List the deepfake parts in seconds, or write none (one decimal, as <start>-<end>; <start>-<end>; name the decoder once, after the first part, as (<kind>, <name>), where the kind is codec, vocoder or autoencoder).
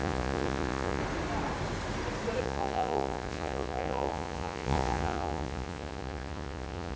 0.0-1.0 (vocoder, Vocos); 2.4-7.0